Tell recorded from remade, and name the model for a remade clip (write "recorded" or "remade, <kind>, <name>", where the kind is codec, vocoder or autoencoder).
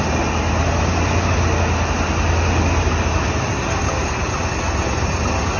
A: recorded